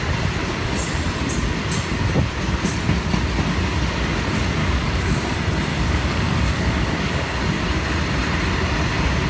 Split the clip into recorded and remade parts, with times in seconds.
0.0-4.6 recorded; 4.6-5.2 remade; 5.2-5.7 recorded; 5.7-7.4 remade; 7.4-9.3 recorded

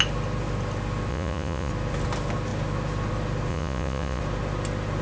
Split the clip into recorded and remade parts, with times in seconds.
0.0-1.1 recorded; 1.1-1.7 remade; 1.7-3.5 recorded; 3.5-4.2 remade; 4.2-5.0 recorded